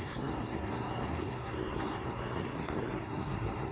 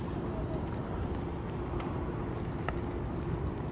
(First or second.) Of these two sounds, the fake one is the first